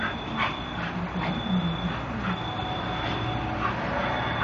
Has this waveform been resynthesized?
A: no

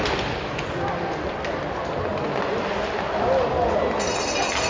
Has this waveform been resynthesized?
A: no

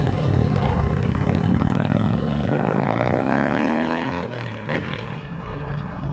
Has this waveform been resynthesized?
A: yes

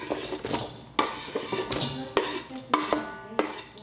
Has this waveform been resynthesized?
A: no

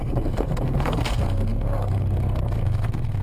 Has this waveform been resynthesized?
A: yes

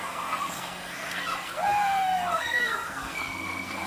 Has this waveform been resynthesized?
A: yes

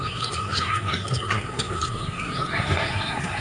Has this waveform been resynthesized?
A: yes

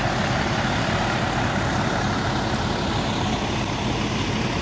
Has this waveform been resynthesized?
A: no